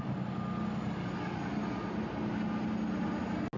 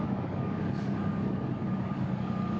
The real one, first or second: first